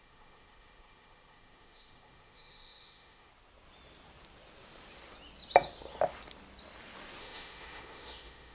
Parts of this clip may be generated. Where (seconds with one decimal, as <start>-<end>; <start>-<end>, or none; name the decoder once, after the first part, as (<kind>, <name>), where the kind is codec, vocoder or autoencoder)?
0.0-3.3 (autoencoder, DAC-VAE); 7.2-8.5